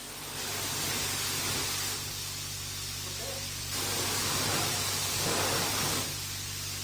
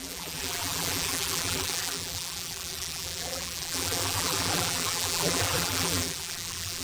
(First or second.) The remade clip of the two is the second